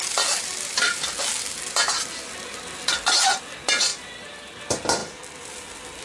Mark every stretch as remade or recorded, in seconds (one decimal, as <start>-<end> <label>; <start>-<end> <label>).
0.0-6.0 recorded

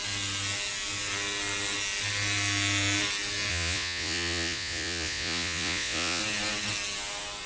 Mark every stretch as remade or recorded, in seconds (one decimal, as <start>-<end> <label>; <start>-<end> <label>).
0.0-3.5 recorded; 3.5-6.2 remade; 6.2-7.5 recorded

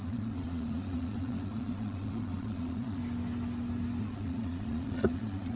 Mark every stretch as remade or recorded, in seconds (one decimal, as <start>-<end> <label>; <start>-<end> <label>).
0.0-3.0 remade; 3.0-4.0 recorded; 4.0-5.6 remade

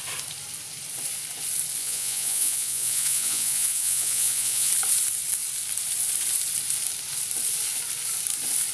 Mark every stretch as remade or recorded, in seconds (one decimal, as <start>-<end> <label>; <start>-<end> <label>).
0.0-1.8 recorded; 1.8-4.7 remade; 4.7-8.7 recorded

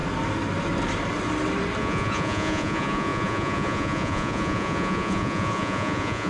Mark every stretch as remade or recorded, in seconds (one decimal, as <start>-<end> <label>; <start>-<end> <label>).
0.0-1.8 recorded; 1.8-6.3 remade

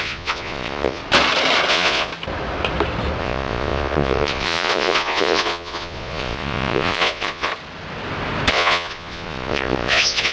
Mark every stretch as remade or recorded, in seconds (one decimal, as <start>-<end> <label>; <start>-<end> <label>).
0.0-1.0 remade; 1.0-1.7 recorded; 1.7-2.1 remade; 2.1-3.2 recorded; 3.2-7.5 remade; 7.5-8.5 recorded; 8.5-10.3 remade